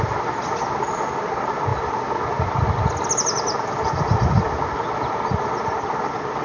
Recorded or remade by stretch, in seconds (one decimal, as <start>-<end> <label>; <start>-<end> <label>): 0.0-6.4 recorded